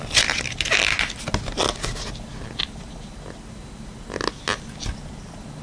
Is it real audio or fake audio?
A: real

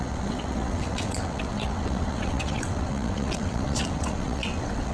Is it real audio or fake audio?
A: fake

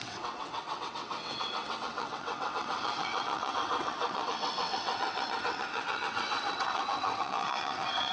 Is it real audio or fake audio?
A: fake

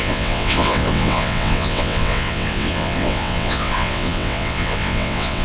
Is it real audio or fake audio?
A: fake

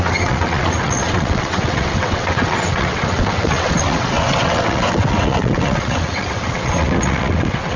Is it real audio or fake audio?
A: fake